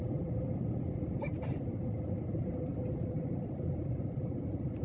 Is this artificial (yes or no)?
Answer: no